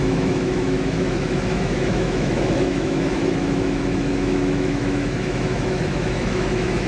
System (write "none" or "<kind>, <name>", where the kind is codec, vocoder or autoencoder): autoencoder, DAC-VAE